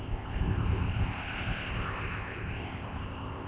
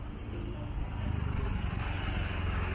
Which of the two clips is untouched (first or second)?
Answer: second